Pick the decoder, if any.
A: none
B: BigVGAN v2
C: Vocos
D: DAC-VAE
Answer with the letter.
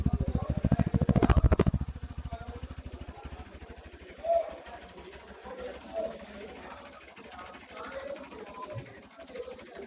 A